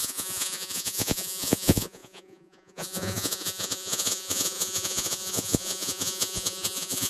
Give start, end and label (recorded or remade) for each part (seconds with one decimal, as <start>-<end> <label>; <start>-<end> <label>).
0.0-7.1 remade

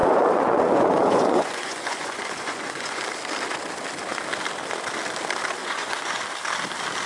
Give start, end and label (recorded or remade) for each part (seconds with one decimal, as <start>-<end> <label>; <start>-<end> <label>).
0.0-3.0 remade; 3.0-5.6 recorded; 5.6-6.2 remade; 6.2-7.1 recorded

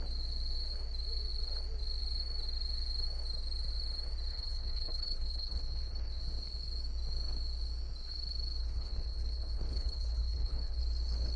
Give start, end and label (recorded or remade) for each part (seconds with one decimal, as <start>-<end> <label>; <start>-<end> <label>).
0.0-4.3 recorded; 4.3-6.2 remade; 6.2-8.6 recorded; 8.6-10.8 remade; 10.8-11.4 recorded

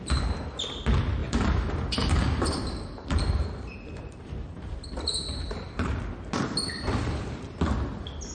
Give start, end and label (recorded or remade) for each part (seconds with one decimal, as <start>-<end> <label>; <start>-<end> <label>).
0.0-1.2 recorded; 1.2-6.0 remade; 6.0-8.3 recorded

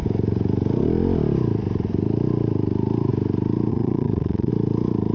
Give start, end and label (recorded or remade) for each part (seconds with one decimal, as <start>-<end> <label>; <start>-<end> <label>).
0.0-3.7 recorded; 3.7-4.5 remade; 4.5-5.1 recorded

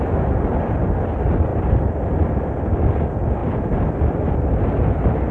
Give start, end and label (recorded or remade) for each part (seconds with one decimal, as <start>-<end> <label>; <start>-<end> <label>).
0.0-1.5 recorded; 1.5-2.5 remade; 2.5-3.4 recorded; 3.4-4.2 remade; 4.2-5.3 recorded

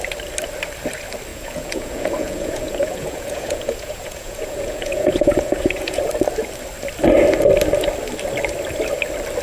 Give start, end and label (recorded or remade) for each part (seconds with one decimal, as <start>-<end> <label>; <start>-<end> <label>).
0.0-1.3 recorded; 1.3-6.0 remade; 6.0-9.4 recorded